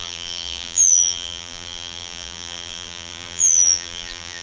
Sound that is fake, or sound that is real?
fake